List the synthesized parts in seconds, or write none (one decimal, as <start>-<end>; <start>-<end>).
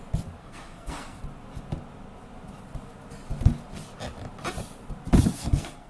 0.4-1.2; 5.3-5.9